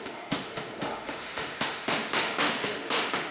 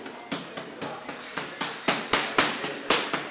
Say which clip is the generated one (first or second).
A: first